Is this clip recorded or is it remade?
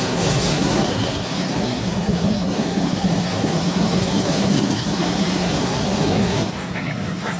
remade